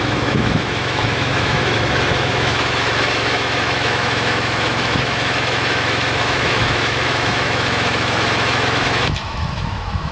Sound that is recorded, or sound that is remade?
remade